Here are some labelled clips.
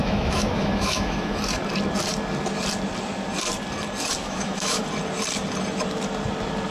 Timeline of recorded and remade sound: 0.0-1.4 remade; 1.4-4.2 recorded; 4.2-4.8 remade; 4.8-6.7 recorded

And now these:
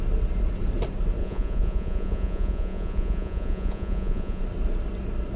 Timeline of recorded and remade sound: 0.0-1.2 recorded; 1.2-4.4 remade; 4.4-5.4 recorded

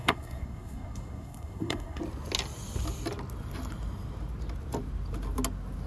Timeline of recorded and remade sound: 0.0-2.0 remade; 2.0-5.9 recorded

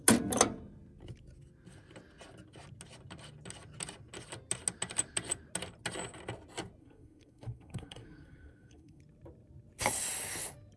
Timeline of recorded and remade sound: 0.0-6.8 recorded; 6.8-9.0 remade; 9.0-10.8 recorded